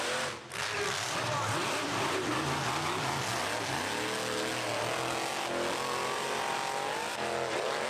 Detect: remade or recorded recorded